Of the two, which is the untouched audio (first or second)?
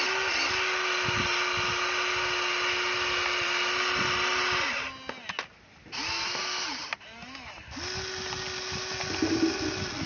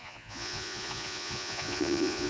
first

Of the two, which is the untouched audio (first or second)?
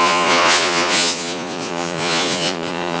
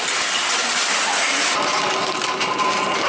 second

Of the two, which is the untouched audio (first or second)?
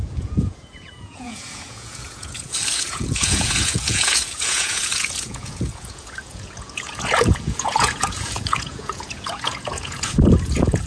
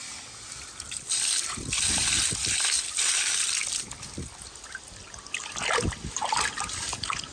second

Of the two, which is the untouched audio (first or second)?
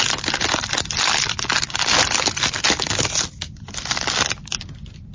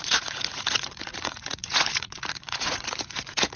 first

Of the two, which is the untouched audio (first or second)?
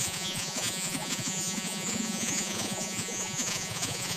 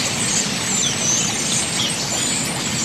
second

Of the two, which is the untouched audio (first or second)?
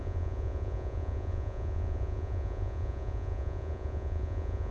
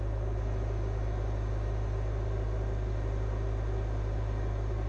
second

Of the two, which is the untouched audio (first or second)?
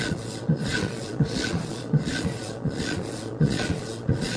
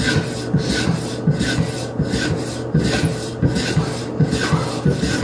second